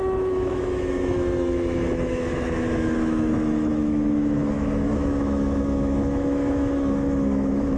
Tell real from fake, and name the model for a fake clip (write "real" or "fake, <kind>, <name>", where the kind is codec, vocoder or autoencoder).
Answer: fake, autoencoder, DAC-VAE